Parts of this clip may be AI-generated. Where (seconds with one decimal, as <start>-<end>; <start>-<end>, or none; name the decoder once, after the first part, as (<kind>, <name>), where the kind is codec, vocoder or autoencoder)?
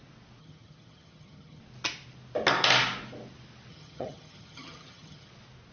0.4-1.6 (vocoder, HiFi-GAN); 3.7-5.3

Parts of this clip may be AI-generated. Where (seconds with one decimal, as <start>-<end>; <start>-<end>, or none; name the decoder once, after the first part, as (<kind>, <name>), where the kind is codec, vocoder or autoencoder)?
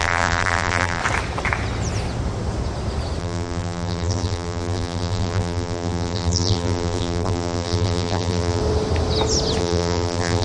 0.0-1.0 (vocoder, BigVGAN v2); 3.2-8.6; 9.6-10.4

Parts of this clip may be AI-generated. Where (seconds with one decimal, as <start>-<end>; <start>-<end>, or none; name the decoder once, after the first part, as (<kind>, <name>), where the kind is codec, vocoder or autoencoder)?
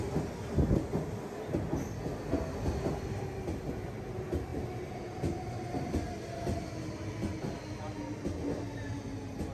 none